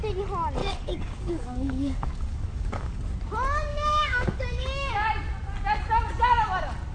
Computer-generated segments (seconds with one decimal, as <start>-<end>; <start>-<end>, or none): 0.6-3.0; 3.7-4.9